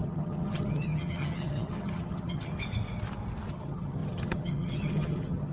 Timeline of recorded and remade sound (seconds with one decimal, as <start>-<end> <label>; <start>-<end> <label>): 0.0-2.5 remade; 2.5-3.5 recorded; 3.5-5.5 remade